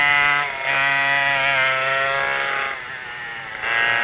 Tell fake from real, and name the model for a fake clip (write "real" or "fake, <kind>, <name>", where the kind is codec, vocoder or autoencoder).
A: real